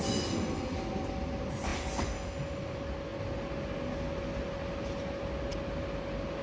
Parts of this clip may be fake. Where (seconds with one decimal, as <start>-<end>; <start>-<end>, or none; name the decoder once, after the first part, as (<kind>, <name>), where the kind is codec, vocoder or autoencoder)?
none